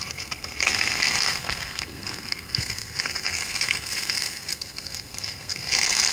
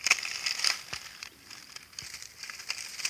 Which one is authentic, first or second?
second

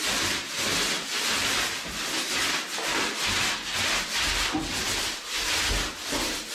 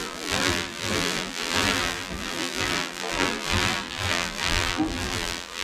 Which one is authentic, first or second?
first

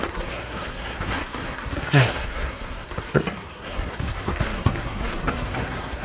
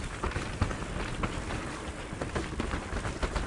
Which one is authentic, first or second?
second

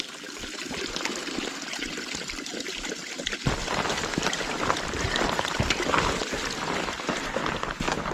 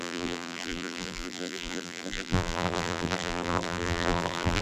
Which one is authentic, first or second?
first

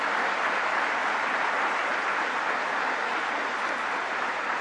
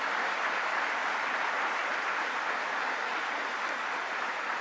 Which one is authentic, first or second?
first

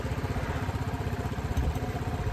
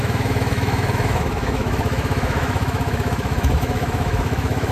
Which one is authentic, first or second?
first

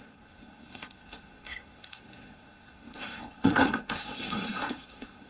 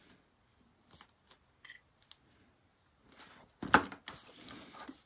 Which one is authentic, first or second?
second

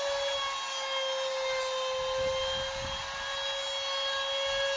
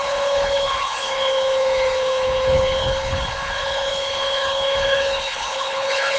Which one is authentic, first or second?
first